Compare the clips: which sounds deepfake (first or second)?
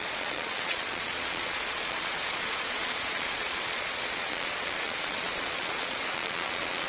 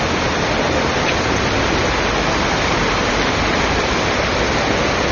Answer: first